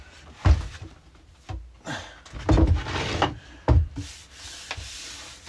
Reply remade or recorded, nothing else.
recorded